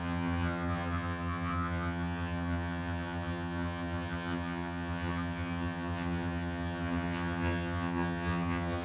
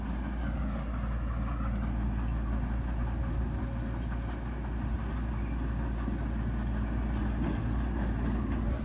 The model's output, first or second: first